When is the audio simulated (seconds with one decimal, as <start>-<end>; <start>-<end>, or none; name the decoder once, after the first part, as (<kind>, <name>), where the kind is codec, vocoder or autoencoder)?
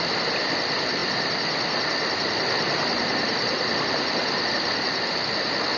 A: none